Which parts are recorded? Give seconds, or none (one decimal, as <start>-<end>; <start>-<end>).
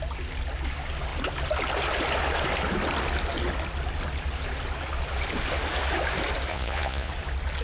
0.0-6.5; 7.1-7.6